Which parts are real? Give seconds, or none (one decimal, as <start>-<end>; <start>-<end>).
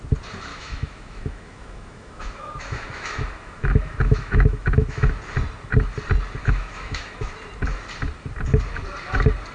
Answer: 0.0-0.5; 5.1-6.4; 7.3-9.5